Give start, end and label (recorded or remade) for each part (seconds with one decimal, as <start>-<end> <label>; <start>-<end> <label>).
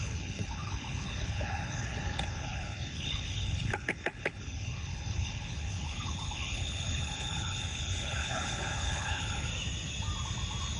0.0-9.5 remade; 9.5-10.8 recorded